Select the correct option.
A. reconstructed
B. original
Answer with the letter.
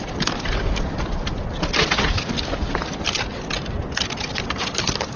B